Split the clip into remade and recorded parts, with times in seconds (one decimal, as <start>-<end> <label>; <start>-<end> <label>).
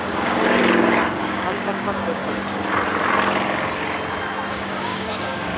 0.0-0.6 remade; 0.6-1.2 recorded; 1.2-2.2 remade; 2.2-4.5 recorded; 4.5-5.6 remade